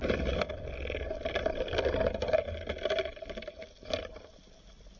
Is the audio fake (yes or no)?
no